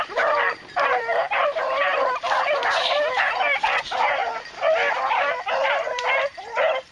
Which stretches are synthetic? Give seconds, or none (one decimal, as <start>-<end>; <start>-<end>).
0.0-4.2; 5.0-6.9